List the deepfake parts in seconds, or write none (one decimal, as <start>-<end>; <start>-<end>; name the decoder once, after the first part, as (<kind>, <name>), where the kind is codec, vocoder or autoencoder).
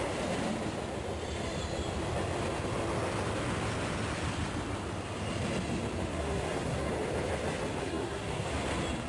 6.1-6.9 (codec, SNAC); 7.8-8.5